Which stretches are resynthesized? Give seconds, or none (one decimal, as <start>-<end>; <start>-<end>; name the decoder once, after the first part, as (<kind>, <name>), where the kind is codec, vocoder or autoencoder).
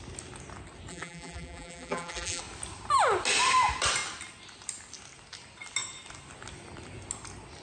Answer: 0.9-2.4 (vocoder, BigVGAN v2)